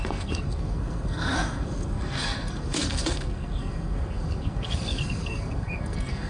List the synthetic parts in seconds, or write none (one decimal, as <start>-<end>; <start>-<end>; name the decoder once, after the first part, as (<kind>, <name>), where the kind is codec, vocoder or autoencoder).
0.0-6.3 (codec, SNAC)